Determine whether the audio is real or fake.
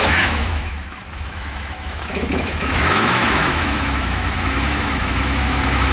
fake